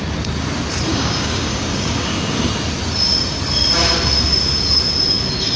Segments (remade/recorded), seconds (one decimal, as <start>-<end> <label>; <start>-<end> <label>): 0.0-0.9 recorded; 0.9-2.5 remade; 2.5-5.6 recorded

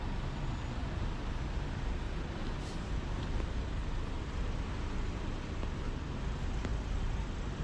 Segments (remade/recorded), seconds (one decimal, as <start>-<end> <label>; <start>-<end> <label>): 0.0-7.6 recorded

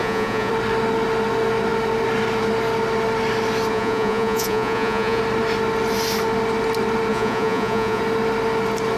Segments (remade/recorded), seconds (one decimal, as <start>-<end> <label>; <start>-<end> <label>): 0.0-0.5 remade; 0.5-3.7 recorded; 3.7-5.2 remade; 5.2-7.1 recorded; 7.1-8.0 remade; 8.0-9.0 recorded

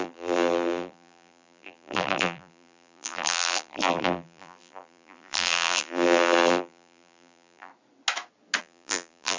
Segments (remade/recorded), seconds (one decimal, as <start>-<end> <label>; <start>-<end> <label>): 0.0-7.7 remade; 7.7-8.6 recorded; 8.6-9.4 remade

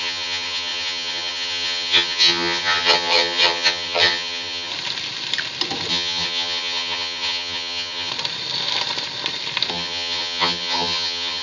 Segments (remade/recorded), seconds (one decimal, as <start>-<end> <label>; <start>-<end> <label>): 0.0-4.7 remade; 4.7-5.9 recorded; 5.9-8.1 remade; 8.1-9.7 recorded; 9.7-11.4 remade